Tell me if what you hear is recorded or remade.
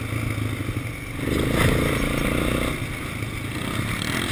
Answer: recorded